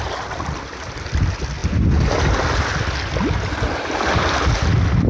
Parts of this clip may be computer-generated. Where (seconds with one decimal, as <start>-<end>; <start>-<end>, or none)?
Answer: none